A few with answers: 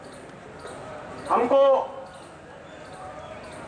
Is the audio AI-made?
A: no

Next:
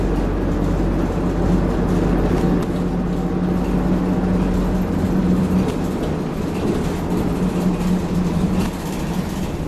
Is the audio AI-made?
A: no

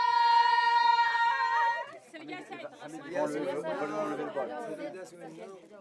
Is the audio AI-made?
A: no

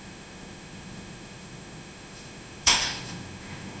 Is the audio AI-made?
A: yes